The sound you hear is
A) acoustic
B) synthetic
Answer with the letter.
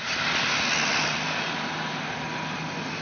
A